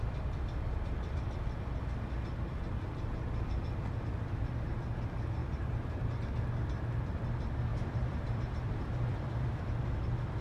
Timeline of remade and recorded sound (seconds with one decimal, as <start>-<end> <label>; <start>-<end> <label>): 0.0-5.4 recorded; 5.4-6.2 remade; 6.2-7.7 recorded; 7.7-9.8 remade; 9.8-10.4 recorded